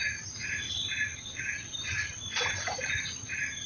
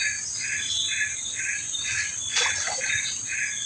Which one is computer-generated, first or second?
first